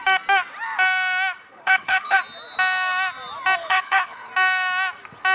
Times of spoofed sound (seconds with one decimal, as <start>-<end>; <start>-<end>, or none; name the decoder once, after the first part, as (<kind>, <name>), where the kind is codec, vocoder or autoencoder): 1.5-2.2 (codec, HILCodec); 3.6-4.3